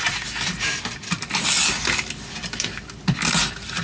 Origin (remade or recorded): recorded